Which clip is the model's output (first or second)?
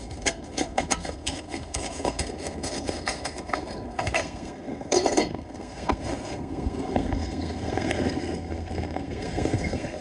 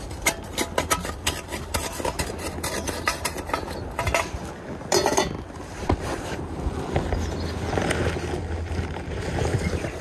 first